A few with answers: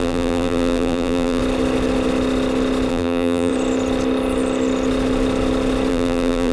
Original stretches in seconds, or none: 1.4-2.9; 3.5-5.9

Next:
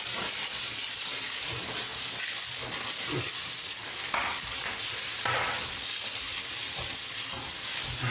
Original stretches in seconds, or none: 0.0-8.1

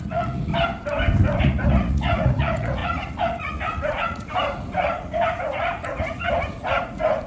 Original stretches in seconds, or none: 0.5-1.4

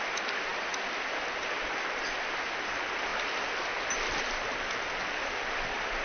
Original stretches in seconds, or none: 0.0-6.0

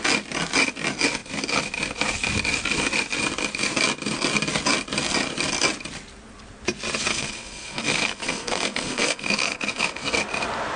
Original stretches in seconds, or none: 0.0-7.1; 10.2-10.8

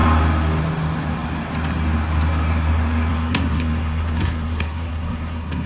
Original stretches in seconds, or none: 0.0-3.1

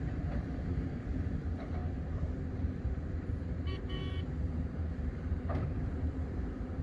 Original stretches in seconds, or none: none

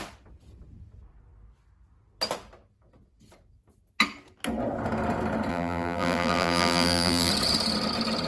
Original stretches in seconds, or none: 0.0-5.5; 7.3-8.3